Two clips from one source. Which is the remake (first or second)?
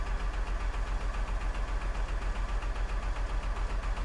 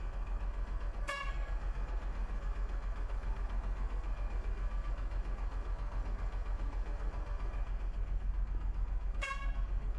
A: second